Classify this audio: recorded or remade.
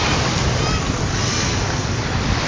recorded